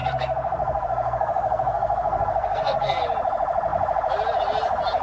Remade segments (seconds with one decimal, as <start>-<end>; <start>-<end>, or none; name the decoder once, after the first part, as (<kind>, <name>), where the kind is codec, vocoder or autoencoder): 0.0-3.0 (codec, SNAC)